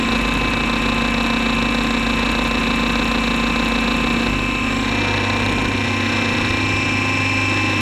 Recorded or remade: recorded